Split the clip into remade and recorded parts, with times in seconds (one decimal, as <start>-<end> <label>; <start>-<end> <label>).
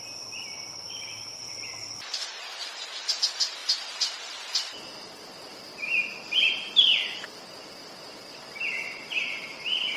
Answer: 0.0-3.6 recorded; 3.6-5.1 remade; 5.1-5.5 recorded; 5.5-7.4 remade; 7.4-10.0 recorded